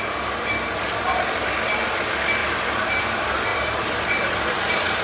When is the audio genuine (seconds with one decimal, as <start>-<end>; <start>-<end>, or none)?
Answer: 0.0-2.4; 3.0-3.5